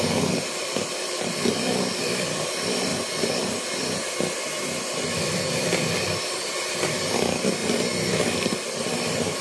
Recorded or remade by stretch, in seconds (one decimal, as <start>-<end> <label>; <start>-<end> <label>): 0.0-9.4 recorded